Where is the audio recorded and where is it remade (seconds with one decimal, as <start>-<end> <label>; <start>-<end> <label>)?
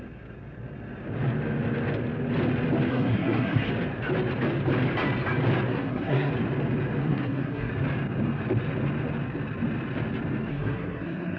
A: 0.0-2.9 recorded; 2.9-3.7 remade; 3.7-5.7 recorded; 5.7-6.3 remade; 6.3-7.0 recorded; 7.0-7.7 remade; 7.7-10.5 recorded; 10.5-11.4 remade